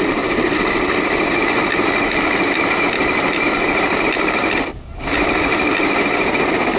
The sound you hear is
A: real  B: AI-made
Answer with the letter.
A